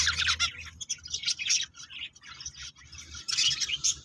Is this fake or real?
real